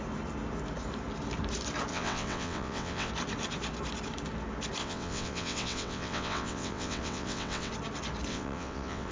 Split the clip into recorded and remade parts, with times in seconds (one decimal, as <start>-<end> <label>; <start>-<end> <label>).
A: 0.0-1.9 recorded; 1.9-3.1 remade; 3.1-4.8 recorded; 4.8-7.7 remade; 7.7-8.3 recorded; 8.3-9.1 remade